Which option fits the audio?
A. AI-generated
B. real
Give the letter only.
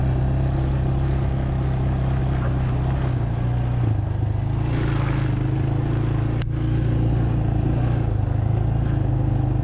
B